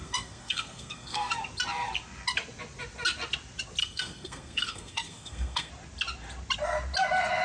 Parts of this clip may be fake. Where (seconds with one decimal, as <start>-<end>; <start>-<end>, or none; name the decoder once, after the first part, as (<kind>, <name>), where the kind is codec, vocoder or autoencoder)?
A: 0.0-1.3 (codec, SNAC); 3.8-5.7